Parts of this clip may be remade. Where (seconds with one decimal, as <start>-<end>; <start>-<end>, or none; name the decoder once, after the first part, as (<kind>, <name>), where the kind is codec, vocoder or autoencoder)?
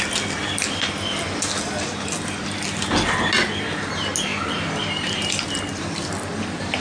none